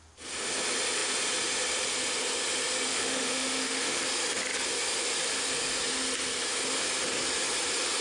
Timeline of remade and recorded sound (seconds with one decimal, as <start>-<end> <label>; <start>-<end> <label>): 0.0-2.9 recorded; 2.9-4.0 remade; 4.0-8.0 recorded